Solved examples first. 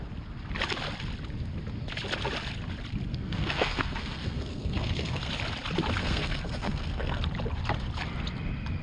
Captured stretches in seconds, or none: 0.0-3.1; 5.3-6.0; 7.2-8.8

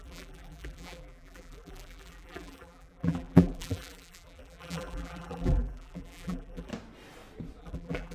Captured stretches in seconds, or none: 6.7-7.6

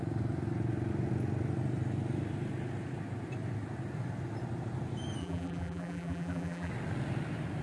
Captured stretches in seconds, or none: 0.0-5.2; 6.7-7.6

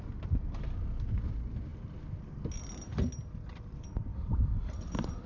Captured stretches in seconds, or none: 0.0-4.1